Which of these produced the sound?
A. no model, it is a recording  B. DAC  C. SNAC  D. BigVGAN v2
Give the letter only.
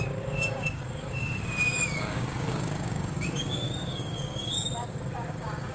B